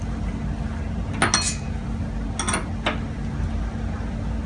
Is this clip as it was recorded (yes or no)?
yes